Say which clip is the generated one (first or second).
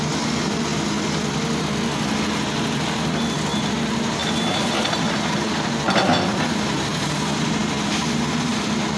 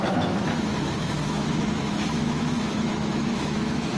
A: second